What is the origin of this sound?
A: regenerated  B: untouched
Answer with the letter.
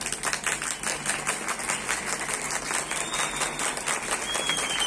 B